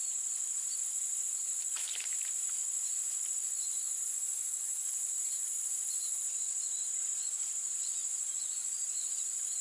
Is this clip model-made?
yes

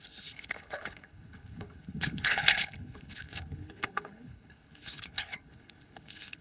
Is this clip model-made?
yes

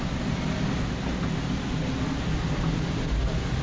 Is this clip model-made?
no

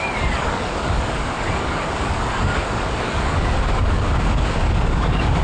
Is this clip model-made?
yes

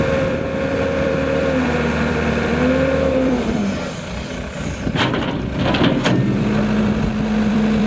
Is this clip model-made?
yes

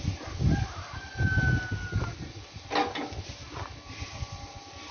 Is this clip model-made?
no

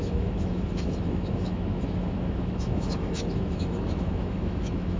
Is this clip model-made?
yes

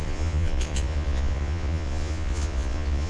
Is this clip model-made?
yes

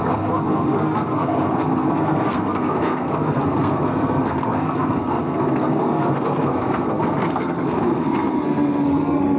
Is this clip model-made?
yes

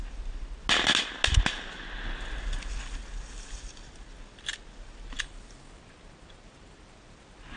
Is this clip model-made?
no